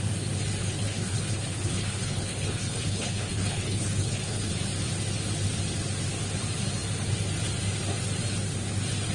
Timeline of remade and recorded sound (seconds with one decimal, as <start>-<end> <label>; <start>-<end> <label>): 0.0-0.6 recorded; 0.6-4.5 remade; 4.5-9.1 recorded